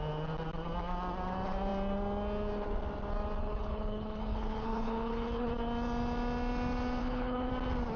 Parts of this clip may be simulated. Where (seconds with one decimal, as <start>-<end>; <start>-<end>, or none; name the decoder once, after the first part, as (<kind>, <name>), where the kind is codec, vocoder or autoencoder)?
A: 3.4-5.5 (codec, HILCodec); 7.0-7.5